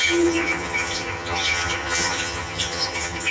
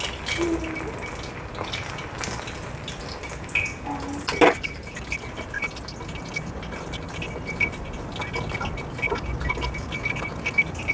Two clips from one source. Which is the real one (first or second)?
second